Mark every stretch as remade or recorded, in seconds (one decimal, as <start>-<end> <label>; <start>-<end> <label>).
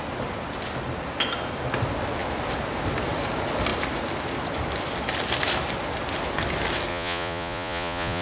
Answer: 0.0-6.9 recorded; 6.9-8.2 remade